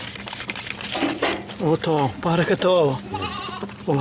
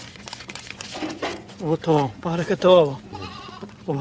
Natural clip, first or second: first